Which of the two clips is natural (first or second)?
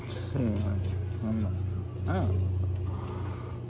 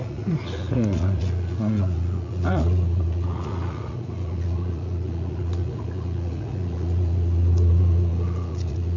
first